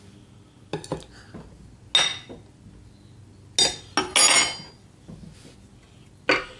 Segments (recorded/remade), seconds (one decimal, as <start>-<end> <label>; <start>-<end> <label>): 0.0-6.6 recorded